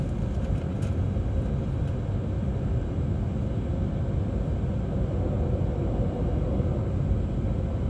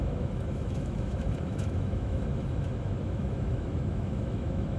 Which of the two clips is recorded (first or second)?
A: first